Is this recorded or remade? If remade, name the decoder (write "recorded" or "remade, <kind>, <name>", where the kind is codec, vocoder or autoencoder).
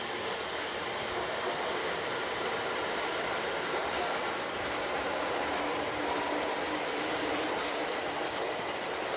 recorded